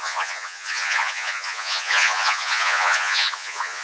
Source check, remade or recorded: remade